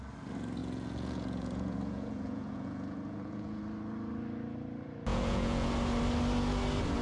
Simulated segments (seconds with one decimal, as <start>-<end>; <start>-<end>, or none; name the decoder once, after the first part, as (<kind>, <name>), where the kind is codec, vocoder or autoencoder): 0.6-3.6 (vocoder, Vocos); 5.1-5.7

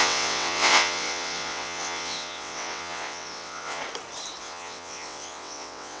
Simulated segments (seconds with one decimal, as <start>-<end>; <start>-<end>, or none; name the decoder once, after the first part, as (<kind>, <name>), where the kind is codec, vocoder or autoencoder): 0.0-3.8 (vocoder, WaveNeXt); 4.4-6.0

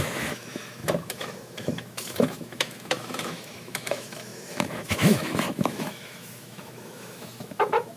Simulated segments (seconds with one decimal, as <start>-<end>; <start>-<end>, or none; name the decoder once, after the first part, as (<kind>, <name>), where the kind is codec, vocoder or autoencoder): 0.0-8.0 (autoencoder, DAC-VAE)

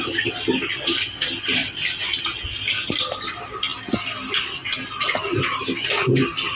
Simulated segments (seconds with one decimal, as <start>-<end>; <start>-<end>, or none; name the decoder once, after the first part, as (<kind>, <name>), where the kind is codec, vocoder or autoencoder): none